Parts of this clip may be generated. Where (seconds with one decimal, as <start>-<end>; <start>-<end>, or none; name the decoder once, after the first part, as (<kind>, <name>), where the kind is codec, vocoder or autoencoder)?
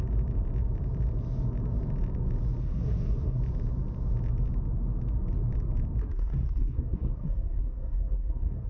2.6-3.4 (codec, SNAC); 6.0-8.7